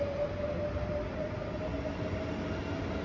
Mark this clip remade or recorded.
recorded